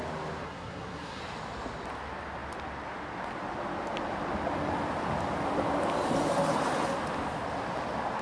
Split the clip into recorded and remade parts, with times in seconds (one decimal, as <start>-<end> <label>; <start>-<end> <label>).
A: 0.0-0.4 recorded; 0.4-1.2 remade; 1.2-8.2 recorded